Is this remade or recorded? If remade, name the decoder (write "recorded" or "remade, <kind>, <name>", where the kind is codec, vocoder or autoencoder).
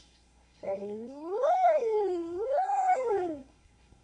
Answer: remade, codec, SNAC